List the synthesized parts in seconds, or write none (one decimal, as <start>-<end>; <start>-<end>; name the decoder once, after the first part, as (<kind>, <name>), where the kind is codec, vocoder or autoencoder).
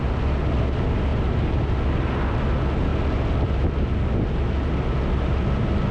none